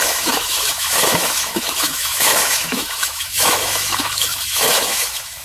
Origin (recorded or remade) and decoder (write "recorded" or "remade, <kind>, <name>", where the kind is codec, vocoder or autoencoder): remade, autoencoder, DAC-VAE